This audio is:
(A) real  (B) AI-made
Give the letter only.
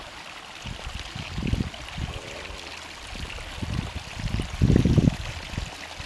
A